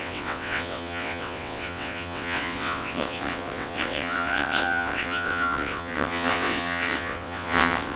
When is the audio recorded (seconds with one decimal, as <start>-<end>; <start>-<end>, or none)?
none